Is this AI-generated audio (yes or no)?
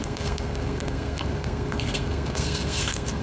yes